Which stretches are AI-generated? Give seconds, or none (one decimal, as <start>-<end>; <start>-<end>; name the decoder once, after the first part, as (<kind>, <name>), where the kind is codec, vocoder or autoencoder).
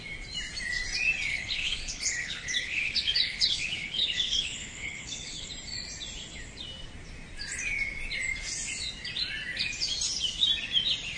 1.3-5.5 (codec, HILCodec)